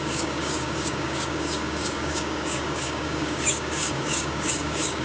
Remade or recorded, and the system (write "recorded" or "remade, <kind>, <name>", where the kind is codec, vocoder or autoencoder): remade, codec, DAC